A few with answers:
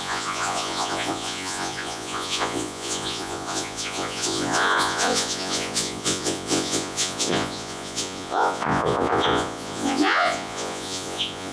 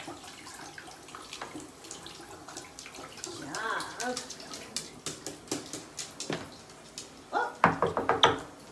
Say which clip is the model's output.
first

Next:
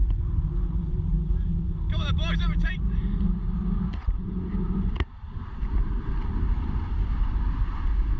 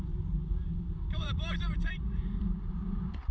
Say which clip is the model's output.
second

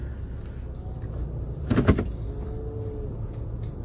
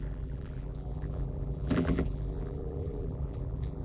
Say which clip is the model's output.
second